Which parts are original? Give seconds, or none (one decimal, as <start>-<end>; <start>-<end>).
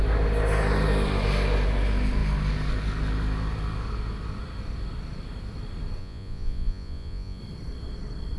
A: 0.0-6.0; 7.4-8.4